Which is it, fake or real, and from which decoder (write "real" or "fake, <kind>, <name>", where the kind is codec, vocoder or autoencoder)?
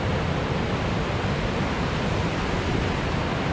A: real